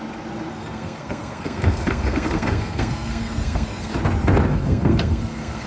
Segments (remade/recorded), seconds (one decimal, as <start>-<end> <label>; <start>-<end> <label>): 0.0-0.5 recorded; 0.5-3.9 remade; 3.9-4.5 recorded; 4.5-5.7 remade

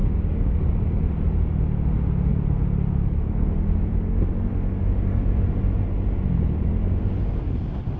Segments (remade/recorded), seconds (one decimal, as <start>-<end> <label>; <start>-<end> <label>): 0.0-0.6 remade; 0.6-8.0 recorded

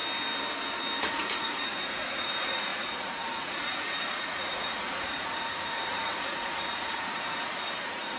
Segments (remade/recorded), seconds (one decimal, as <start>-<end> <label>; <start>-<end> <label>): 0.0-1.0 recorded; 1.0-8.2 remade